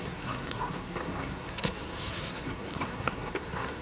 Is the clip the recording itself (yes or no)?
no